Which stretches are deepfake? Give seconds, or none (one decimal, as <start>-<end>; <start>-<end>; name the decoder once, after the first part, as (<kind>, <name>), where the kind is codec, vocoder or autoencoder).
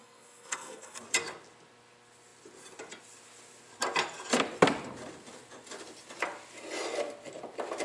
0.0-1.0 (codec, SNAC)